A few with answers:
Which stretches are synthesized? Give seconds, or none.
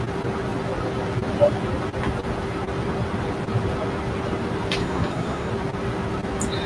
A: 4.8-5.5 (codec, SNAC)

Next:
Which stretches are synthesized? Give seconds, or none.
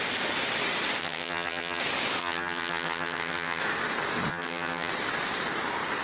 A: 1.0-1.8 (vocoder, HiFi-GAN); 2.2-3.6; 4.3-4.9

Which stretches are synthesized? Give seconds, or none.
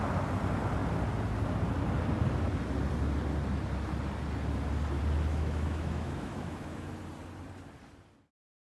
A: 5.3-6.9 (autoencoder, DAC-VAE)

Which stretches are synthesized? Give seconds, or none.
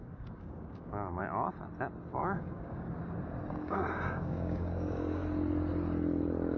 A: 0.0-1.2 (codec, DAC); 2.2-3.0; 3.6-5.2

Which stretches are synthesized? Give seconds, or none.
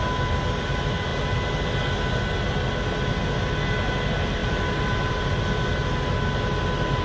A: 4.4-5.1 (vocoder, BigVGAN v2)